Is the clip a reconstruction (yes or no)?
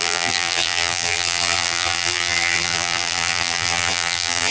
yes